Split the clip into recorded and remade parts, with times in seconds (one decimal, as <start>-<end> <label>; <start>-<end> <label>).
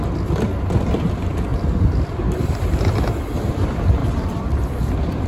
0.0-1.5 recorded; 1.5-2.8 remade; 2.8-4.0 recorded; 4.0-5.3 remade